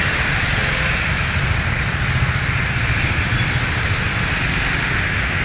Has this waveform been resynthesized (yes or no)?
no